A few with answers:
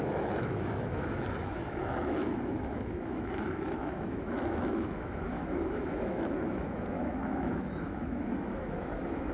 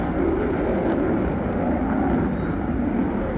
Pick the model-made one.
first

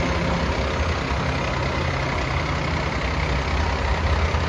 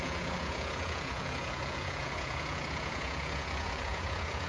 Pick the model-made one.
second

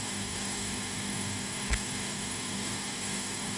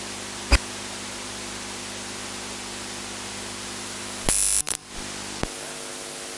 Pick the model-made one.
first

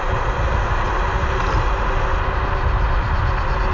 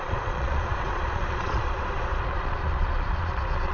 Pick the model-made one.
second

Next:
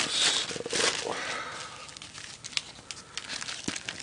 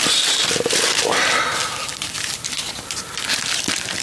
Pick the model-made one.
second